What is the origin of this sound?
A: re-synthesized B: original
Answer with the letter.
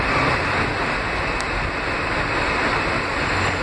B